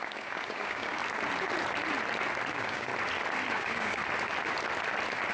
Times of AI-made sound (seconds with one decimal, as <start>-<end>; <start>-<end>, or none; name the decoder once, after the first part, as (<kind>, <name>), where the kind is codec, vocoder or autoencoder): 0.0-1.0 (codec, DAC); 2.5-2.9; 3.5-4.0